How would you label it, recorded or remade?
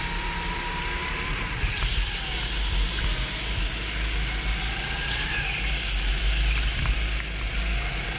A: recorded